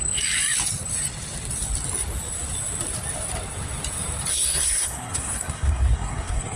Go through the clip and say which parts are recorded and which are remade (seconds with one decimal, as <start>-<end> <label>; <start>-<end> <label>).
0.0-4.3 recorded; 4.3-6.6 remade